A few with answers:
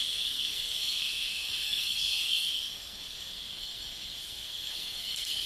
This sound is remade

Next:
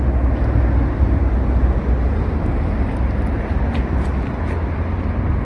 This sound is recorded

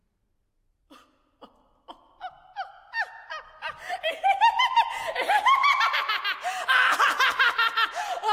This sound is recorded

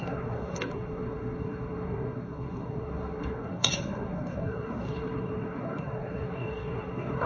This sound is remade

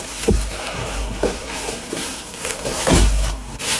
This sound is remade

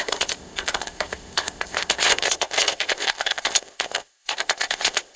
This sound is remade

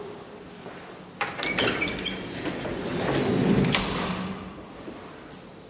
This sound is remade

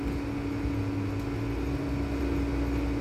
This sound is recorded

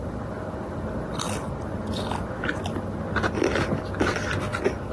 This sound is recorded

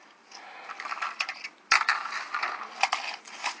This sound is recorded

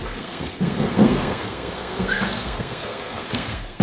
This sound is remade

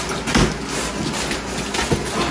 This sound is recorded